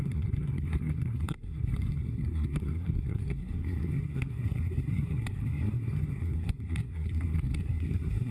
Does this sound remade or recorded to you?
remade